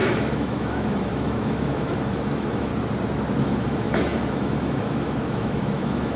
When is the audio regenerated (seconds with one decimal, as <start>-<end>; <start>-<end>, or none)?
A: 0.0-2.7; 3.4-6.2